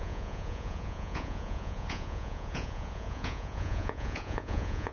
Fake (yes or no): yes